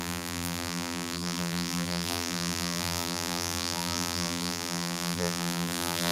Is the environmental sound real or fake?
fake